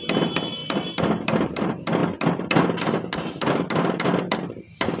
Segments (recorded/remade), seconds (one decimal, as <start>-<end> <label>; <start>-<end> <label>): 0.0-5.0 recorded